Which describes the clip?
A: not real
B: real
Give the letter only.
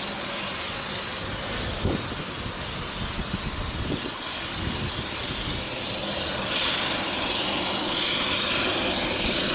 B